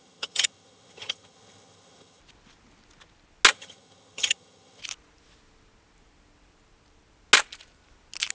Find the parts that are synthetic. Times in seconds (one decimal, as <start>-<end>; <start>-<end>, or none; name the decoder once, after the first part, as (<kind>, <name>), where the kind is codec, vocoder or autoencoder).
0.0-2.2 (vocoder, HiFi-GAN); 3.5-4.8